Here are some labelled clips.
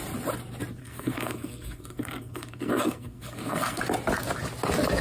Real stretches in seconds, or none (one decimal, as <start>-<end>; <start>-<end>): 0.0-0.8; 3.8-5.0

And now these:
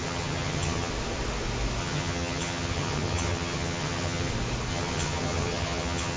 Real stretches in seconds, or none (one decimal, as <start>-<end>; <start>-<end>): 0.9-1.8; 4.3-4.7

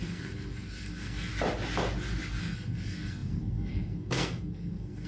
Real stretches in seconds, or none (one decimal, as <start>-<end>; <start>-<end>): 1.3-2.4

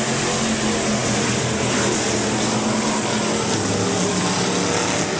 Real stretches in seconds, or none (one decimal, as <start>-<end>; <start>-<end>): 0.0-5.2

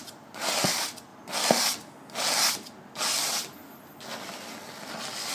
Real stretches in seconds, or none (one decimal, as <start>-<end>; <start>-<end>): 0.0-5.3

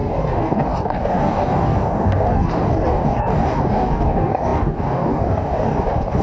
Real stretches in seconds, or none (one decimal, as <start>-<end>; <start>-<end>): none

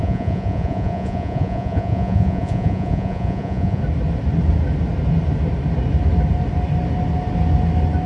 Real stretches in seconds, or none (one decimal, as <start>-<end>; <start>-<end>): 3.8-8.1

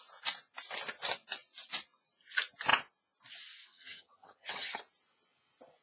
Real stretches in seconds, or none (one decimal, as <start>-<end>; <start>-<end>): 0.0-3.7; 4.8-5.8